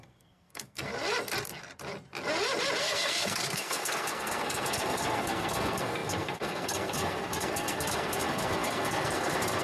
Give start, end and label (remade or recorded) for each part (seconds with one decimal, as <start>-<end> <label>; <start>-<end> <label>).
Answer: 0.0-0.9 remade; 0.9-2.8 recorded; 2.8-9.6 remade